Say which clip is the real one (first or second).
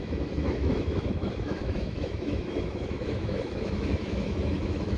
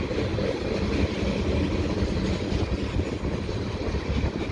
second